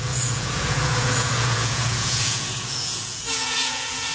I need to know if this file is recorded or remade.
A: remade